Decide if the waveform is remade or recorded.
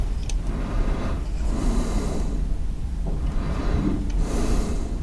recorded